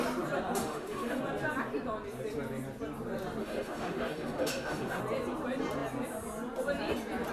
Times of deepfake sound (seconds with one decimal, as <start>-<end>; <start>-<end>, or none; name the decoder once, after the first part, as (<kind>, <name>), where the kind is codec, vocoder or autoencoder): 0.6-1.2 (autoencoder, DAC-VAE); 3.4-5.0